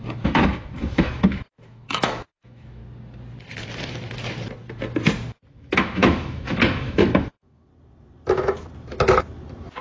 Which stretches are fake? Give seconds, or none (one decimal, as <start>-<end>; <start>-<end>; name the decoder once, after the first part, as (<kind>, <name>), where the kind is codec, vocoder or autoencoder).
0.0-2.8 (autoencoder, DAC-VAE); 5.5-7.7